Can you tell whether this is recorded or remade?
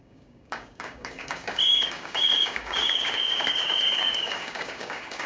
remade